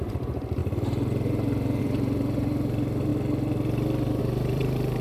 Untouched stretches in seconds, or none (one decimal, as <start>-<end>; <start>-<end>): 0.6-1.8; 3.1-4.2

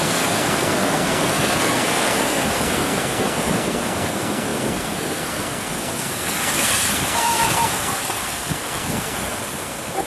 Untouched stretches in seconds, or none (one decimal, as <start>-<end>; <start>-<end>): none